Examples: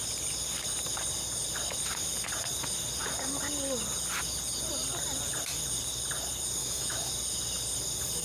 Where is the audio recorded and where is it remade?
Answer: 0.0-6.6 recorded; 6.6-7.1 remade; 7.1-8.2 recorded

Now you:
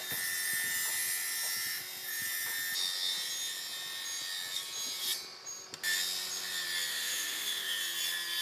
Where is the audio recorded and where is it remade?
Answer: 0.0-6.9 recorded; 6.9-7.8 remade; 7.8-8.4 recorded

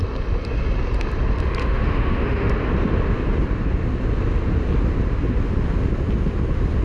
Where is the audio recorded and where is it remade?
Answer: 0.0-1.6 recorded; 1.6-2.5 remade; 2.5-6.8 recorded

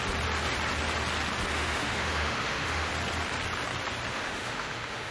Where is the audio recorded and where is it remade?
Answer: 0.0-1.5 recorded; 1.5-2.9 remade; 2.9-4.1 recorded; 4.1-5.1 remade

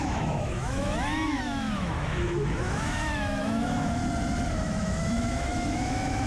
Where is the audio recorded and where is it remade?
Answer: 0.0-4.0 remade; 4.0-4.6 recorded; 4.6-6.3 remade

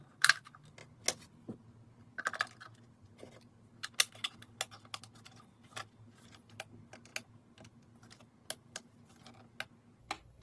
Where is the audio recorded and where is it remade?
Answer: 0.0-10.4 recorded

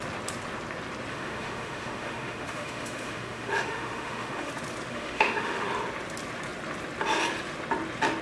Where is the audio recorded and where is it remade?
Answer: 0.0-1.1 recorded; 1.1-4.5 remade; 4.5-4.9 recorded; 4.9-5.7 remade; 5.7-8.2 recorded